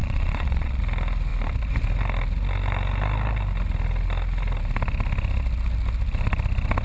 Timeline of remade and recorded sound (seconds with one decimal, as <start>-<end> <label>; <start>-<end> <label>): 0.0-0.8 remade; 0.8-6.8 recorded